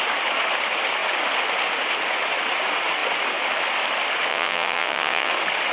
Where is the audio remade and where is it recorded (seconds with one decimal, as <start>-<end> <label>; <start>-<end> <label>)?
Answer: 0.0-4.3 recorded; 4.3-5.3 remade; 5.3-5.7 recorded